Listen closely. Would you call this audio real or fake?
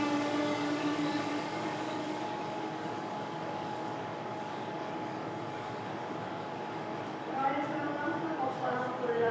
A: fake